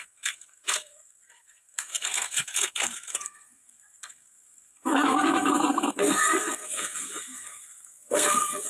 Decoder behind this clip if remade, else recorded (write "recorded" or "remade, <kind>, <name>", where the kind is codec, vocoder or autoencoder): remade, codec, SNAC